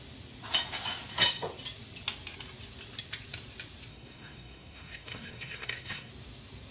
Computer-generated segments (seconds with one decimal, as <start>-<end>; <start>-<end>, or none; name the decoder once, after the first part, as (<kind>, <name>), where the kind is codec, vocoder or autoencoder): 3.9-6.1 (codec, SNAC)